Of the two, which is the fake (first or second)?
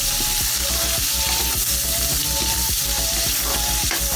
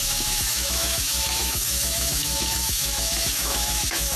second